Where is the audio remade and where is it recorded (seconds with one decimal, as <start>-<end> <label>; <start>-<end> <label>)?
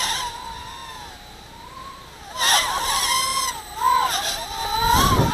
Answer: 0.0-5.3 recorded